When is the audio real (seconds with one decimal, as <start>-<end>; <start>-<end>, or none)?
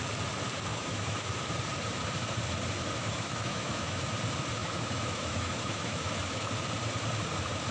0.0-0.7; 1.3-3.0; 4.1-4.6; 6.5-7.7